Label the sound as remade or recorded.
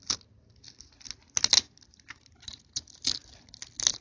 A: recorded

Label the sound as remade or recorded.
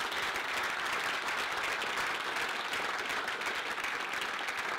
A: recorded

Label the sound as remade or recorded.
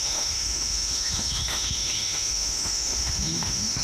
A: remade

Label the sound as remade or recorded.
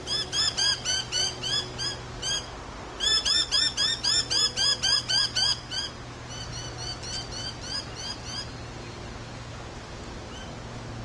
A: recorded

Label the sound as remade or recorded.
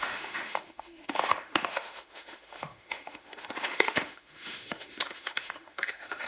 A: remade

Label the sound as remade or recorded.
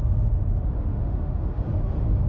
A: remade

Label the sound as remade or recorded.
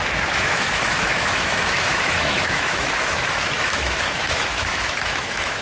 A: remade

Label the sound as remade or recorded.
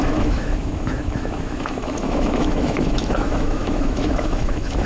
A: remade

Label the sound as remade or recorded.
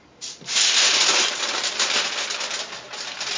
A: recorded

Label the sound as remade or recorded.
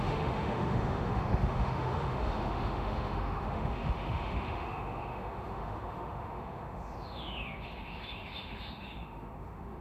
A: remade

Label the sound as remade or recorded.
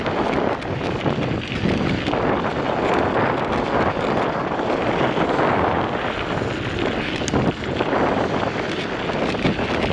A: recorded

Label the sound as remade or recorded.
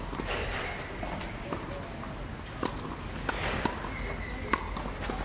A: recorded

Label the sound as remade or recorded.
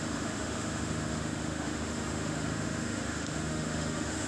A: remade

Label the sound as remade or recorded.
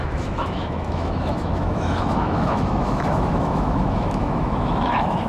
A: remade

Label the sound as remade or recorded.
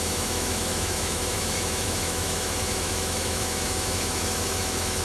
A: remade